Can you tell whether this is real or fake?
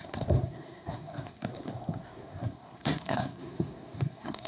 fake